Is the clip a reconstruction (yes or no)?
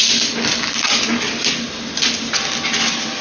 no